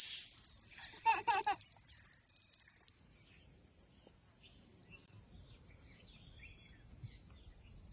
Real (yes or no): yes